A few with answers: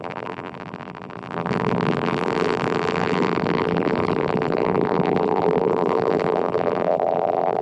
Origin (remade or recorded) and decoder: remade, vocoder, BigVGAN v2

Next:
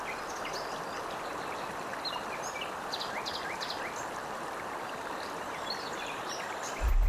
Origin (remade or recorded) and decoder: recorded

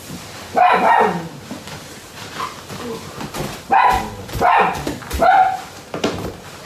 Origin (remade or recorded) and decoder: recorded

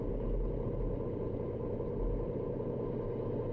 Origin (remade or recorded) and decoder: recorded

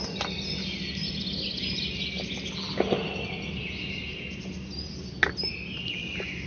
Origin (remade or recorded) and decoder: recorded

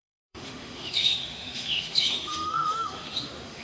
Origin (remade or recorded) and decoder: remade, autoencoder, DAC-VAE